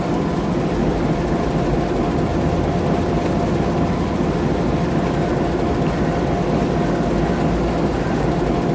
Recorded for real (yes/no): yes